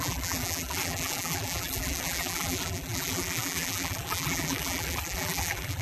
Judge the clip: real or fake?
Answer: fake